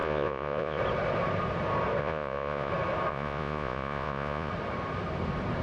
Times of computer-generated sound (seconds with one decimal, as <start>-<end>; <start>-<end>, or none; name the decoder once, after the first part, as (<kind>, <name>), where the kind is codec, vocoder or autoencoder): 0.0-0.8 (vocoder, Vocos); 2.0-2.7; 3.1-4.5